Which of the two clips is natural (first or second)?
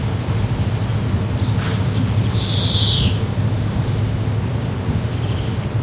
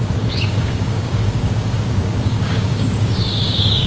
first